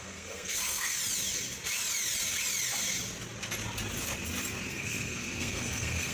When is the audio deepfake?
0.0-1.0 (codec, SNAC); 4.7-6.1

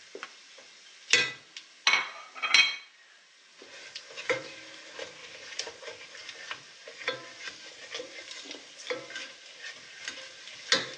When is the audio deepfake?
5.2-5.8 (vocoder, BigVGAN v2)

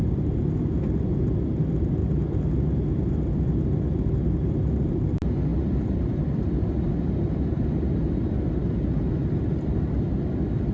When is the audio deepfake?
none

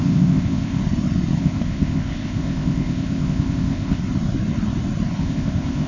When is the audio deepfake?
0.0-0.8 (codec, ZipCodec); 1.4-4.0; 5.2-5.9

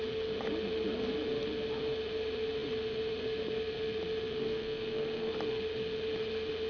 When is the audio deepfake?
4.4-5.3 (codec, SNAC)